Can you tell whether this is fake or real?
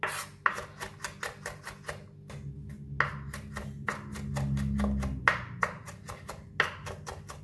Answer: real